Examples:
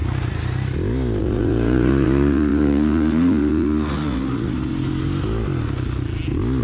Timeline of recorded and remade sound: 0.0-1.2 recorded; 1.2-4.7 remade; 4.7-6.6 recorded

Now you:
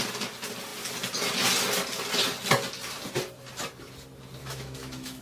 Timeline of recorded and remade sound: 0.0-4.4 recorded; 4.4-5.2 remade

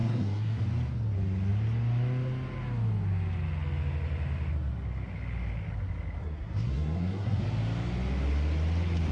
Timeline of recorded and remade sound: 0.0-0.6 remade; 0.6-6.2 recorded; 6.2-7.4 remade; 7.4-9.1 recorded

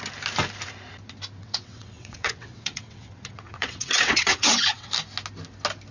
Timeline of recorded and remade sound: 0.0-1.4 recorded; 1.4-4.9 remade; 4.9-5.9 recorded